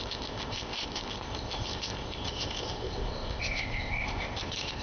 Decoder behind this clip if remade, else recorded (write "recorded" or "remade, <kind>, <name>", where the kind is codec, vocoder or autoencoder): remade, codec, ZipCodec